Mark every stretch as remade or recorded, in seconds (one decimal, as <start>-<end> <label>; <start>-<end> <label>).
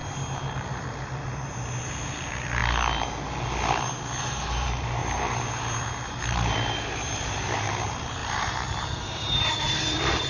0.0-0.5 recorded; 0.5-2.6 remade; 2.6-4.2 recorded; 4.2-10.3 remade